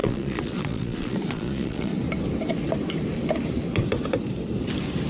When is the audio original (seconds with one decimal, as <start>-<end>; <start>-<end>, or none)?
1.9-5.1